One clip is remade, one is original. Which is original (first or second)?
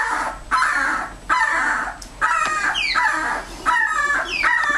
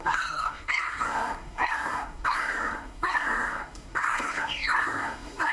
first